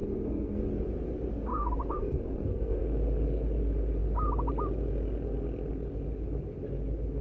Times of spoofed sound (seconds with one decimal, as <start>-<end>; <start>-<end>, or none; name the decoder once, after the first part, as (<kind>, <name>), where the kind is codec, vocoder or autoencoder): 0.0-0.6 (codec, SNAC); 1.5-2.8

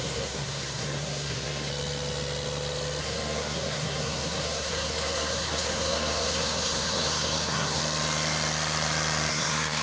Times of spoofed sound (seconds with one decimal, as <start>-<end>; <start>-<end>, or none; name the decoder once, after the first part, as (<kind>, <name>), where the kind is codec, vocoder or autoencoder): 0.0-1.7 (codec, SNAC); 3.0-7.8; 9.3-9.8

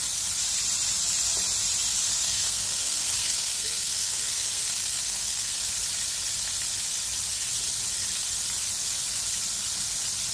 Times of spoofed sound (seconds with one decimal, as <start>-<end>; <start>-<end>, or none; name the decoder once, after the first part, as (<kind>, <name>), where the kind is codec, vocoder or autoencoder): 2.1-5.7 (codec, SNAC)